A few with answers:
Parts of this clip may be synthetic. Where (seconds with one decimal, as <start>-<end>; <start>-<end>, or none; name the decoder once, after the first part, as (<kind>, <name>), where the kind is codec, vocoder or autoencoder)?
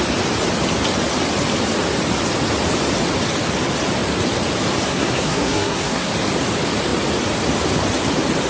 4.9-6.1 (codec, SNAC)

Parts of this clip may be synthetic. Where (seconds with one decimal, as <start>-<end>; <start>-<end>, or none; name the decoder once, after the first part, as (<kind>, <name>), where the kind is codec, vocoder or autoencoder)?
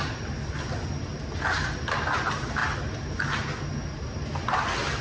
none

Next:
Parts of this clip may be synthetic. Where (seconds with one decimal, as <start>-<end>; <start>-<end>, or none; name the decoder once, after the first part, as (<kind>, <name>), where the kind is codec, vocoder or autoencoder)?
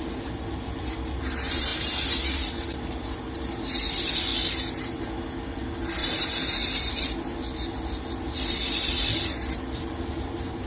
none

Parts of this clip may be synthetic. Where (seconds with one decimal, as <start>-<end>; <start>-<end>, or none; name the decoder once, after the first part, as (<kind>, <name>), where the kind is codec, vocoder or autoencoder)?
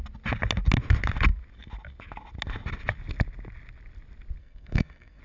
4.4-5.2 (codec, SNAC)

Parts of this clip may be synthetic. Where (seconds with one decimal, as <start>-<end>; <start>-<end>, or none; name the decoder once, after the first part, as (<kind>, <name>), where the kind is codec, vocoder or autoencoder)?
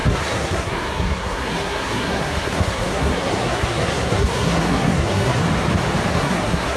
0.0-5.4 (codec, SNAC); 6.1-6.8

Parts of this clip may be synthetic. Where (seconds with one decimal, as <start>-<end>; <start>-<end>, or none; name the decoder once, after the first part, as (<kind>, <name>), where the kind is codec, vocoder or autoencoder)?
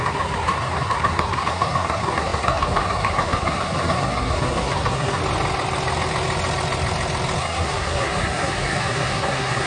0.0-5.2 (codec, SNAC); 7.4-9.7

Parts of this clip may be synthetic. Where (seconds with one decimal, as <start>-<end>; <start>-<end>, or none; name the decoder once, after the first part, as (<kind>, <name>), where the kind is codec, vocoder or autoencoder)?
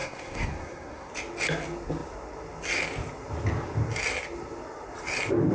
0.0-1.1 (codec, SNAC)